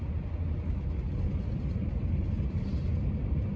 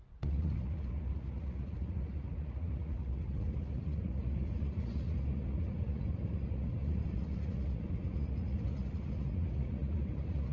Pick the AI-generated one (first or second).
second